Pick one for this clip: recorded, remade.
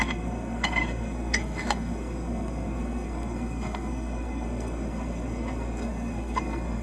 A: remade